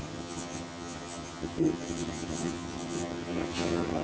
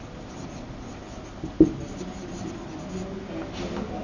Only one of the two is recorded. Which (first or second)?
second